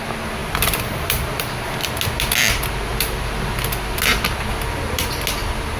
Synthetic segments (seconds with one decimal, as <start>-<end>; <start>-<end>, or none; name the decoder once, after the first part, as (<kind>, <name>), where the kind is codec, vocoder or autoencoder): 0.4-1.6 (vocoder, BigVGAN v2); 2.9-4.0